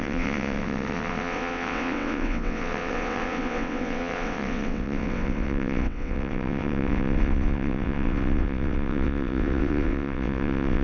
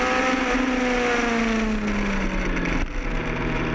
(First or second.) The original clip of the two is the second